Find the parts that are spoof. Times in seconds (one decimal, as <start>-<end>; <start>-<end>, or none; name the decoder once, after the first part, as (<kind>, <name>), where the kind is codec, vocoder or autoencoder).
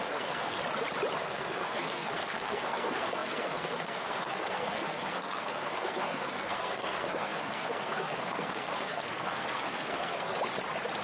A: 0.0-0.6 (codec, SNAC); 1.2-10.3